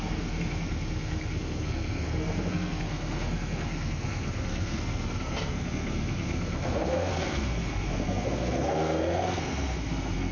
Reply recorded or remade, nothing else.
remade